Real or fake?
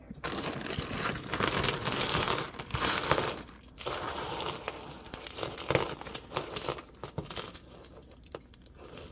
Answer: real